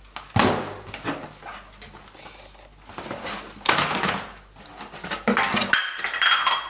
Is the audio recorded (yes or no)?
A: yes